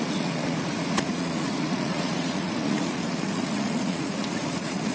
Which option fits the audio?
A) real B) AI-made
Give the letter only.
B